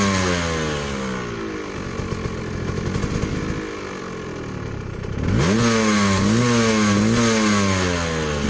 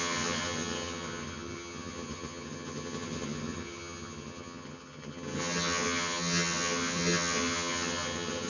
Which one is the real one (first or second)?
first